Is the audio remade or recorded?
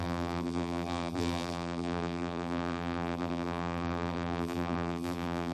remade